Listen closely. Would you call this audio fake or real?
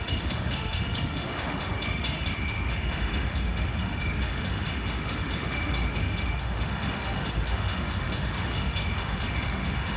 fake